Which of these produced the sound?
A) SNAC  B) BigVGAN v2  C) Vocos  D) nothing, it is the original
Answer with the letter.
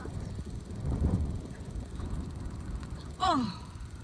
C